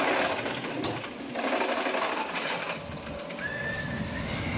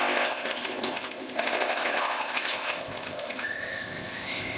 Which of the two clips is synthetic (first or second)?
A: second